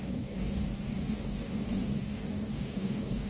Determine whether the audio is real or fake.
fake